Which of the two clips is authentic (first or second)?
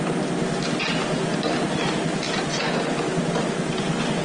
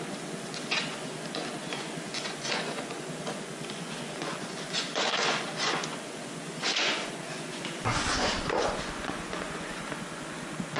first